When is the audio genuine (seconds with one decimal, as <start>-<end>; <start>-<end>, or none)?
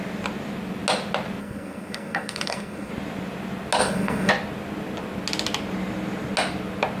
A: 0.0-1.4; 2.9-3.8; 4.3-7.0